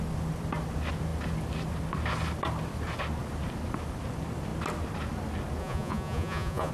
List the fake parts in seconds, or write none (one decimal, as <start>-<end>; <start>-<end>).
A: 5.6-6.7